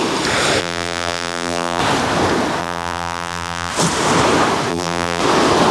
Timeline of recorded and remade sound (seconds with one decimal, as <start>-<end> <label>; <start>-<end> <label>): 0.0-0.6 recorded; 0.6-1.8 remade; 1.8-2.6 recorded; 2.6-3.7 remade; 3.7-4.7 recorded; 4.7-5.2 remade; 5.2-5.7 recorded